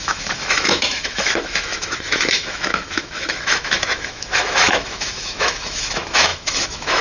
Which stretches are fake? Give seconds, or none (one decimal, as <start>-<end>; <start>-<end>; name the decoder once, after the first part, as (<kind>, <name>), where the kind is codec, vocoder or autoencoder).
0.0-7.0 (autoencoder, DAC-VAE)